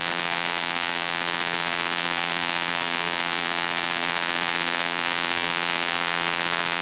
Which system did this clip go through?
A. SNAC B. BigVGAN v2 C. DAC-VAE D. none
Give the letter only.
B